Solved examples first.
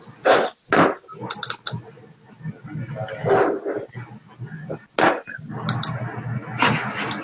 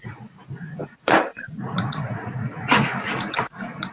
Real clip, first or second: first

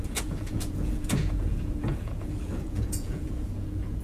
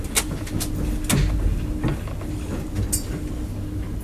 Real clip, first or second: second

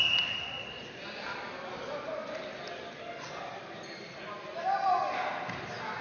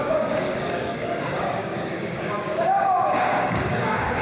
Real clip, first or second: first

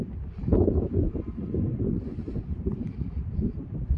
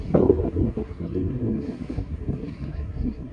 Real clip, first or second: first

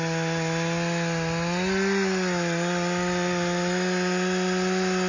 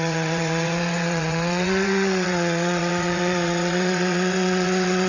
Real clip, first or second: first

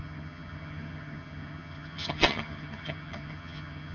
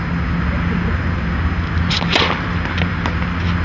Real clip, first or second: second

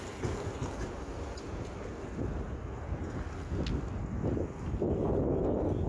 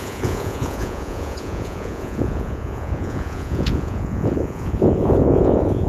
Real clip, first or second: first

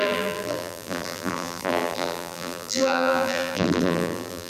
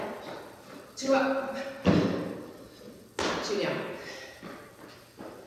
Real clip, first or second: second